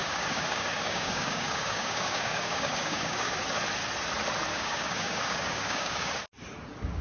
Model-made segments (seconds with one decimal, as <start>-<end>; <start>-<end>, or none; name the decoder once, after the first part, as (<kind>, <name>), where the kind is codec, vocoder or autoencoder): 0.0-3.4 (codec, DAC); 4.5-6.1